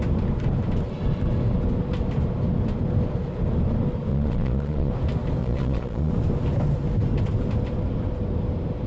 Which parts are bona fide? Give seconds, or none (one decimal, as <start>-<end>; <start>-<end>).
0.0-4.1; 4.9-5.4; 6.1-8.9